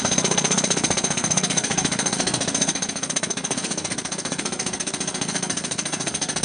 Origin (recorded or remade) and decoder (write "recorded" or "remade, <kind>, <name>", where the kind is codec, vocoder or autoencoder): remade, codec, SNAC